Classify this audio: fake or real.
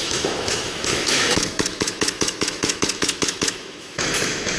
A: fake